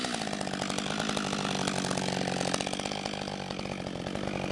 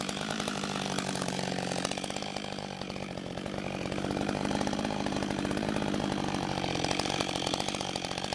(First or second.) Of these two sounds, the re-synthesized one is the second